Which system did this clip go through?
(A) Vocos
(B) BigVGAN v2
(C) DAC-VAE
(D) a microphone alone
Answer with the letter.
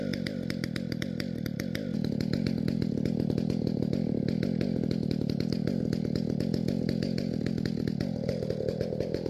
D